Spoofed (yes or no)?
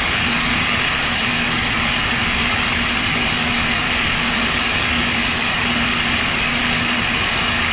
yes